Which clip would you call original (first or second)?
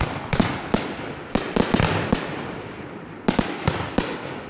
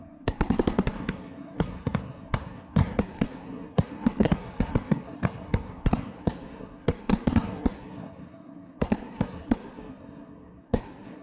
first